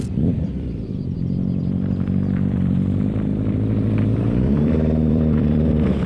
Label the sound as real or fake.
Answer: fake